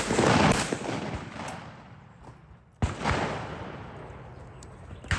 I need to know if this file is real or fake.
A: real